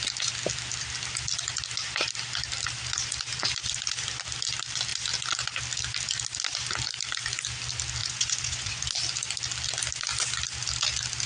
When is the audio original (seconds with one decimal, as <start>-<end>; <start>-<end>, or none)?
0.0-8.0; 8.8-11.3

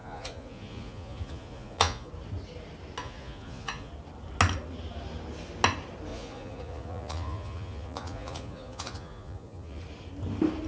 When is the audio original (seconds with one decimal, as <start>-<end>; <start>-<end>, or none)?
2.1-3.0; 3.9-6.1; 9.8-10.7

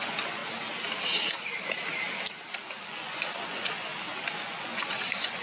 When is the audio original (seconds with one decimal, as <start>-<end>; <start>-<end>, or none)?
0.4-2.8; 3.9-4.4